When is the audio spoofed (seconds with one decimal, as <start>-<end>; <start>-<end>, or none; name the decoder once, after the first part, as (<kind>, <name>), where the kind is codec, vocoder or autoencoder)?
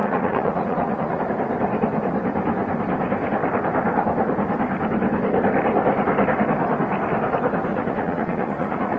0.0-1.2 (vocoder, Vocos); 7.7-9.0